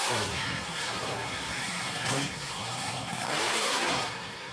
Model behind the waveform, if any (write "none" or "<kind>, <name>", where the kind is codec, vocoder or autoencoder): codec, SNAC